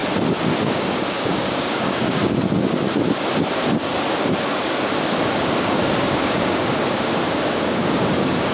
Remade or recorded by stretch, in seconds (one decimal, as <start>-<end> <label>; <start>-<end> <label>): 0.0-0.6 recorded; 0.6-2.2 remade; 2.2-5.6 recorded; 5.6-8.5 remade